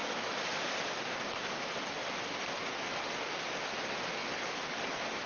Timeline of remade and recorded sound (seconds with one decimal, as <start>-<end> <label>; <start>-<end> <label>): 0.0-5.3 recorded